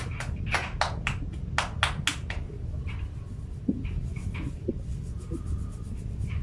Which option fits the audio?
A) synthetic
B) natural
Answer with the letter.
B